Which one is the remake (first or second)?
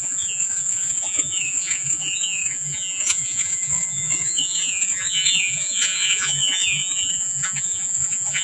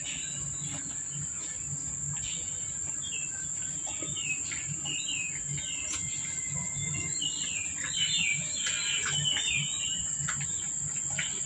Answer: first